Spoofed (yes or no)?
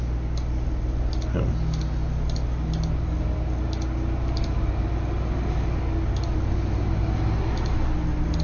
no